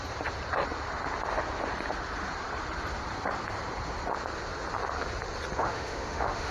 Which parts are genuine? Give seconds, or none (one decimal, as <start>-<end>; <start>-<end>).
0.0-5.6

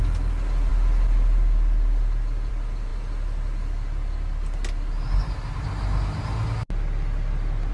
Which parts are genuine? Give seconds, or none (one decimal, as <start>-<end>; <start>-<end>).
0.0-7.7

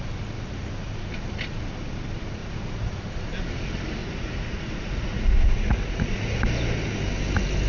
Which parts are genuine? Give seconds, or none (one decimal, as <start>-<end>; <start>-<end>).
0.0-2.4; 3.3-4.0; 6.4-7.7

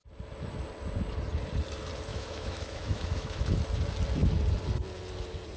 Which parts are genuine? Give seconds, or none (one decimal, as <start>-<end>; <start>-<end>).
0.0-2.1; 3.5-5.6

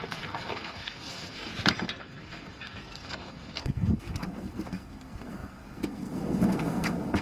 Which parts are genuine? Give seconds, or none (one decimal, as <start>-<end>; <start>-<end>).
1.5-2.0